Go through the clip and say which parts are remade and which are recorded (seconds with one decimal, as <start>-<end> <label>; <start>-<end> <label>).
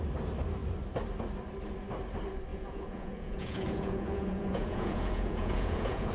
0.0-2.5 recorded; 2.5-6.1 remade